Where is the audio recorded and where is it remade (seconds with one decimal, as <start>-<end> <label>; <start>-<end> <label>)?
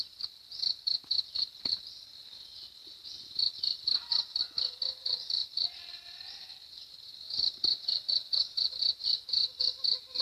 0.0-10.2 remade